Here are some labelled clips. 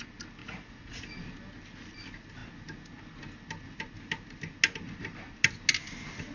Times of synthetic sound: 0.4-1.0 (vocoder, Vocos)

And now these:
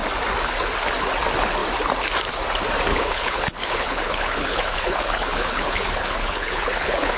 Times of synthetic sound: 2.9-7.2 (codec, HILCodec)

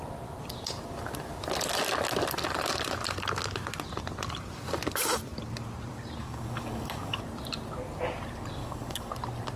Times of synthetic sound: 6.2-7.2 (codec, DAC); 8.6-9.1

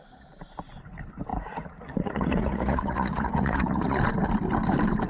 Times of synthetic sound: 1.3-4.0 (vocoder, Vocos)

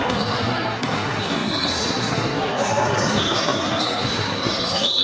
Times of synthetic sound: 0.0-5.0 (codec, SNAC)

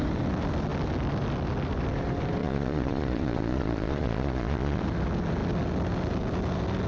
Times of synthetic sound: 2.4-4.8 (vocoder, Vocos)

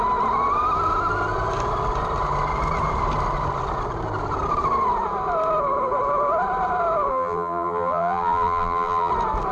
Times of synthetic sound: 7.1-9.1 (vocoder, BigVGAN v2)